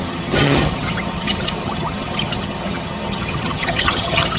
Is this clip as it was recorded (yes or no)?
no